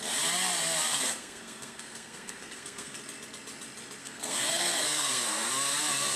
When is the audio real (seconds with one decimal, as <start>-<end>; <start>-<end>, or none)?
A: 0.0-0.9; 3.0-4.0; 5.5-6.2